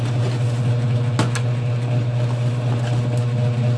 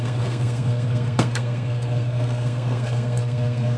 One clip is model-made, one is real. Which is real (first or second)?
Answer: first